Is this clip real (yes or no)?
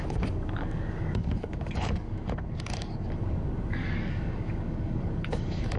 no